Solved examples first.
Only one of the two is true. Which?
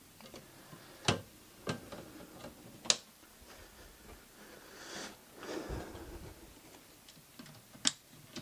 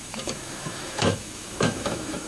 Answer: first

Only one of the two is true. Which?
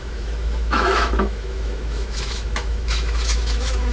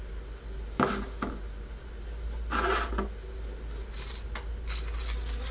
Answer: second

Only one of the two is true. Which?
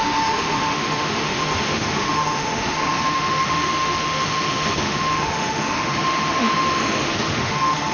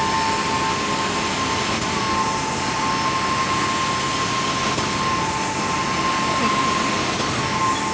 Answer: second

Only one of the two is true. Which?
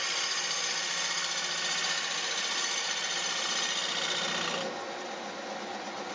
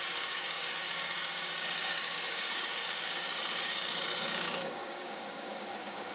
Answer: first